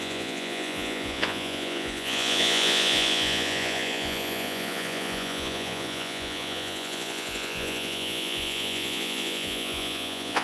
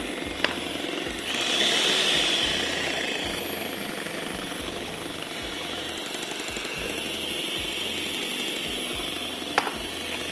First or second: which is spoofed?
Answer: first